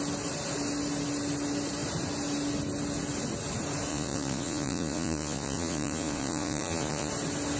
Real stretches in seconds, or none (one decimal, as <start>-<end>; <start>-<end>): 0.0-3.9; 7.1-7.6